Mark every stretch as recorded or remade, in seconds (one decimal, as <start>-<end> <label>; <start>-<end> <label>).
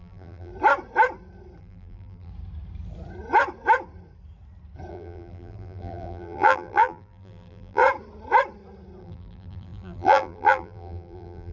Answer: 0.0-0.5 remade; 0.5-1.6 recorded; 1.6-2.3 remade; 2.3-4.9 recorded; 4.9-7.8 remade; 7.8-9.0 recorded; 9.0-11.5 remade